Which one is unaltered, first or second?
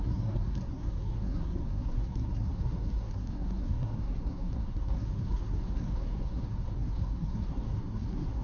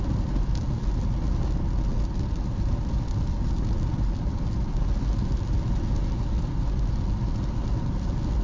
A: second